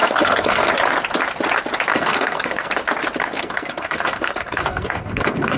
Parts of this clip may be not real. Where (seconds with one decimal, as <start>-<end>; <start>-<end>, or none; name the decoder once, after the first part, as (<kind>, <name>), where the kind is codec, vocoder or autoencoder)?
0.0-0.7 (codec, SNAC); 1.9-2.7; 3.2-5.6